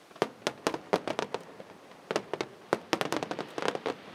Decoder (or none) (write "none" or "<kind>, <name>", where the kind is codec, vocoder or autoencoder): none